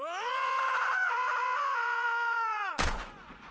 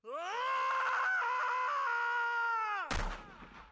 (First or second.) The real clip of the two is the second